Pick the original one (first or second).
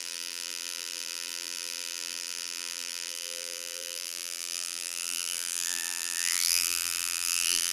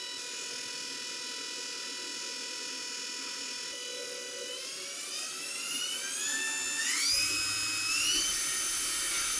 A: second